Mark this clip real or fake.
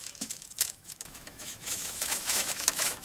fake